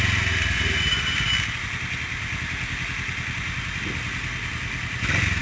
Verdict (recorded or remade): recorded